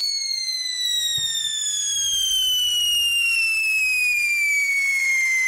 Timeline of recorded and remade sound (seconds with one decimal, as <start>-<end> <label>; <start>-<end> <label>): 0.0-3.1 recorded; 3.1-5.1 remade; 5.1-5.5 recorded